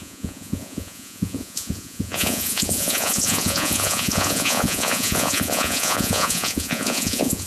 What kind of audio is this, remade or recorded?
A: remade